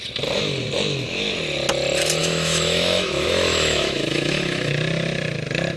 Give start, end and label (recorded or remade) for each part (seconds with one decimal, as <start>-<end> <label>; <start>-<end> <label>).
0.0-2.2 recorded; 2.2-4.7 remade; 4.7-5.8 recorded